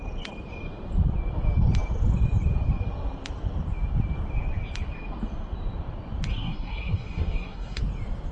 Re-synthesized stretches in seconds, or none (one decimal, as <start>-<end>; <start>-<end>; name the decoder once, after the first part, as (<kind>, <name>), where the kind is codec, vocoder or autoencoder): 6.3-7.8 (codec, SNAC)